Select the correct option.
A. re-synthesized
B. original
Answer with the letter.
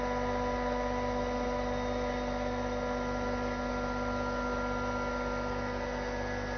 B